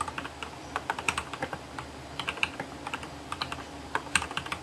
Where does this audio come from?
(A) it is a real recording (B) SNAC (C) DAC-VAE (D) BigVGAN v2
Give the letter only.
A